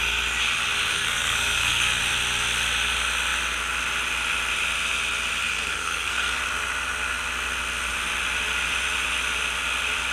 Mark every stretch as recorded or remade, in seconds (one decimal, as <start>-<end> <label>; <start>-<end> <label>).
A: 0.0-0.9 recorded; 0.9-2.0 remade; 2.0-5.4 recorded; 5.4-6.4 remade; 6.4-10.1 recorded